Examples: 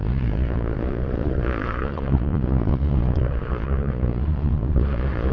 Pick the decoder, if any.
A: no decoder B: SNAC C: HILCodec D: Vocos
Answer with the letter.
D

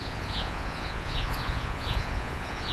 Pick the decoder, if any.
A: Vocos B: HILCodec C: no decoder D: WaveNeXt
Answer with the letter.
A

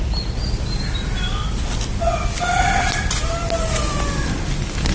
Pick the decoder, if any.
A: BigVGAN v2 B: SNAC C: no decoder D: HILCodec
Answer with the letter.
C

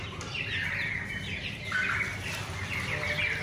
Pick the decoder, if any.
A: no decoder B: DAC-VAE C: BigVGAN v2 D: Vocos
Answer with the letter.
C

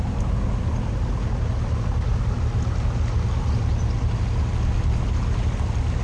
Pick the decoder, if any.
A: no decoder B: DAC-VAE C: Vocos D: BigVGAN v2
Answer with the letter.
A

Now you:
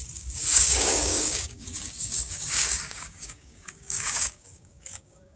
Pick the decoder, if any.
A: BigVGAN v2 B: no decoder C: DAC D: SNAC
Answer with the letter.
C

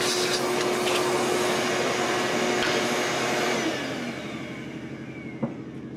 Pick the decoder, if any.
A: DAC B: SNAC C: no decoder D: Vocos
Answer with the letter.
C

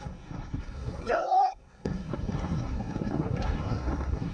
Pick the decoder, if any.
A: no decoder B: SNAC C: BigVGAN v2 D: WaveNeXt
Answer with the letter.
B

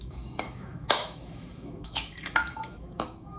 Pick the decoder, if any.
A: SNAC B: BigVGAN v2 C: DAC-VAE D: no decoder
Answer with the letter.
C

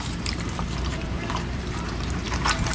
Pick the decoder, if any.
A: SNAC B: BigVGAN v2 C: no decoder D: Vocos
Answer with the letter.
B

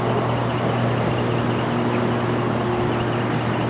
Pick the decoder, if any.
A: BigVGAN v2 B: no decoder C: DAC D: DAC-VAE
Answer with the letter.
B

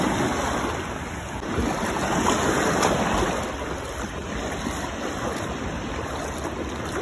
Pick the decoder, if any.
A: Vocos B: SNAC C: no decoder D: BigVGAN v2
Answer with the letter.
C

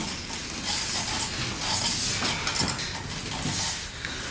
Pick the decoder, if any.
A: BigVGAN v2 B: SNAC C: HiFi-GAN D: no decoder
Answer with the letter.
D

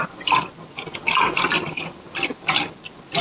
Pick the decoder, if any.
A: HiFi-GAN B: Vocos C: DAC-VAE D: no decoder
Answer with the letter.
D